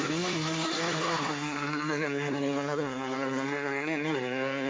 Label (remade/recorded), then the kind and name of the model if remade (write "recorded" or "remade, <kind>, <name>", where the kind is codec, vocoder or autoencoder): remade, codec, SNAC